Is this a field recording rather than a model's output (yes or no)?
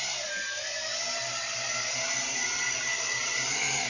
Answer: yes